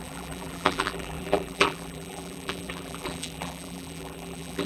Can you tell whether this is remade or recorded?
remade